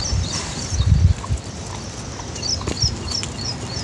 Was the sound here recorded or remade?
recorded